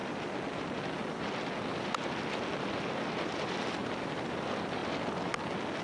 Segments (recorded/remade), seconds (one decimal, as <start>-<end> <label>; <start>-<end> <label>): 0.0-3.8 recorded; 3.8-4.3 remade; 4.3-5.8 recorded

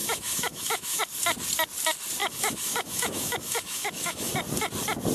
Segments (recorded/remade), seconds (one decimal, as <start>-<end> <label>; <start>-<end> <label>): 0.0-1.0 remade; 1.0-2.2 recorded; 2.2-4.3 remade; 4.3-5.1 recorded

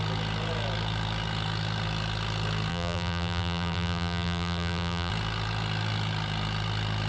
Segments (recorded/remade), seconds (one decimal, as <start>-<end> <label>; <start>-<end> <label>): 0.0-2.7 recorded; 2.7-5.1 remade; 5.1-7.1 recorded